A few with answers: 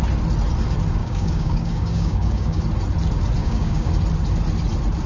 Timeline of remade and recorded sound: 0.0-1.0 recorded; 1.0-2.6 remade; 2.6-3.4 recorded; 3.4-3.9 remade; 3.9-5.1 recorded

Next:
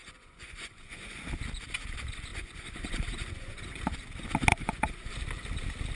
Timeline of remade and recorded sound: 0.0-1.2 remade; 1.2-2.3 recorded; 2.3-3.8 remade; 3.8-4.5 recorded; 4.5-5.1 remade; 5.1-6.0 recorded

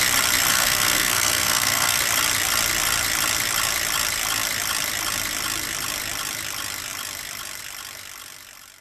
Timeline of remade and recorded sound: 0.0-0.5 recorded; 0.5-2.0 remade; 2.0-8.8 recorded

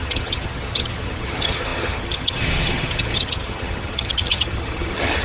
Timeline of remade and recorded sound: 0.0-5.2 remade

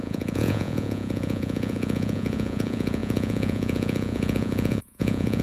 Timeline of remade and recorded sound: 0.0-5.4 remade

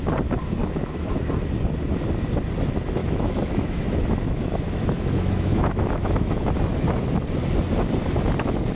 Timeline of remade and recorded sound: 0.0-0.6 recorded; 0.6-1.1 remade; 1.1-3.0 recorded; 3.0-6.5 remade; 6.5-8.8 recorded

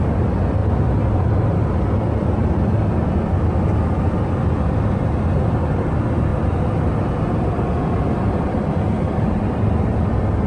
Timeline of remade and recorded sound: 0.0-10.5 recorded